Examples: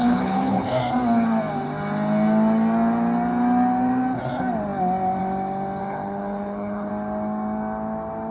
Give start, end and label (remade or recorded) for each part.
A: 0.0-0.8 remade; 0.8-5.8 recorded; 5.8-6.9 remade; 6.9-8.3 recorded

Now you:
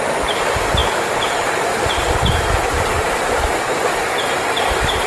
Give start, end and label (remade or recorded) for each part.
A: 0.0-5.1 recorded

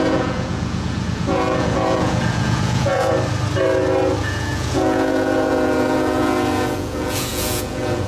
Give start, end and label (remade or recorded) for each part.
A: 0.0-3.1 remade; 3.1-4.2 recorded; 4.2-8.1 remade